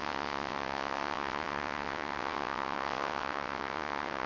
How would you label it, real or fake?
fake